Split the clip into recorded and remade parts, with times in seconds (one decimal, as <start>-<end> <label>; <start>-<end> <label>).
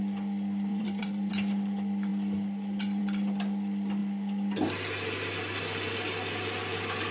0.0-0.7 recorded; 0.7-1.3 remade; 1.3-7.1 recorded